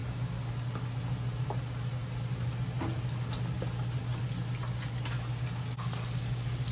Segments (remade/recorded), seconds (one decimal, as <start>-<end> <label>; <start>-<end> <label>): 0.0-6.7 recorded